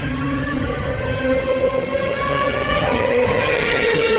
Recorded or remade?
remade